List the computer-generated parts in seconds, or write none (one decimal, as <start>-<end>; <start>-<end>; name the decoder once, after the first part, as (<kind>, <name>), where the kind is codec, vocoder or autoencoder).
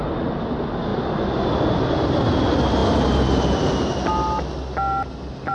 none